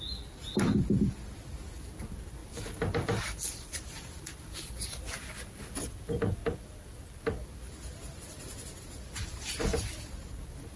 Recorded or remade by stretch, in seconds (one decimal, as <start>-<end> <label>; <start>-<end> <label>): 0.0-2.4 recorded; 2.4-5.8 remade; 5.8-10.8 recorded